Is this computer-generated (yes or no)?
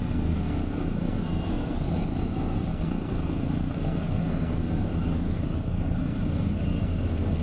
yes